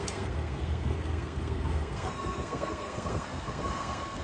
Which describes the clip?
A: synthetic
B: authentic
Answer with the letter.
A